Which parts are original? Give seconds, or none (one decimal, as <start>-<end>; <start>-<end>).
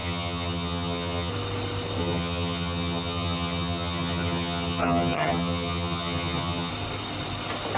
1.3-2.0; 6.7-7.8